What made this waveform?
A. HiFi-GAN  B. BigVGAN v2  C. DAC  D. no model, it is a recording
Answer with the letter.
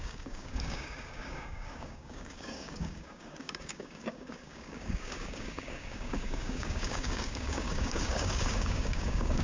C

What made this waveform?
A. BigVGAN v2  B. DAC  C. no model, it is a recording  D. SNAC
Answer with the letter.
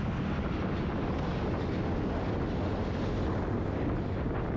C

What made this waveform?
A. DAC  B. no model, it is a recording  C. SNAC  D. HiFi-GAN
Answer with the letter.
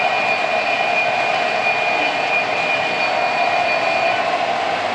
B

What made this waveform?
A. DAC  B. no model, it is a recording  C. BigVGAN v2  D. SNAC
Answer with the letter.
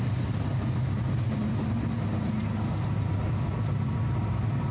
B